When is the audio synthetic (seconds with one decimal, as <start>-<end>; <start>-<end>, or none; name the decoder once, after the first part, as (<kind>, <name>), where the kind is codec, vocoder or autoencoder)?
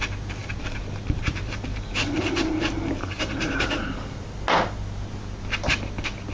0.4-4.2 (vocoder, BigVGAN v2)